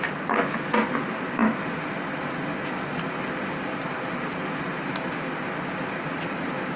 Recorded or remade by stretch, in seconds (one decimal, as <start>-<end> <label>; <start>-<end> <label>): 0.0-6.8 recorded